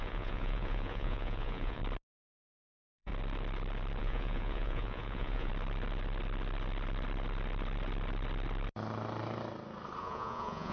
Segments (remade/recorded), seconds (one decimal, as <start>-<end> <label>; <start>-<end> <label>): 0.0-1.8 remade; 1.8-2.5 recorded; 2.5-3.1 remade; 3.1-4.0 recorded; 4.0-5.5 remade; 5.5-10.0 recorded; 10.0-10.7 remade